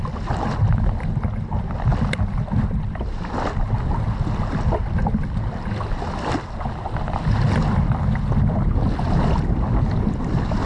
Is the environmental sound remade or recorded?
recorded